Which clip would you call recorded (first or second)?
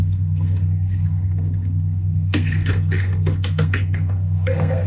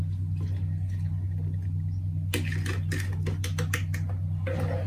second